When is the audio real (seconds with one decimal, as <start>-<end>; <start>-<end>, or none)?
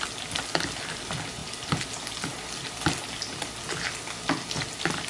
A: 0.0-5.1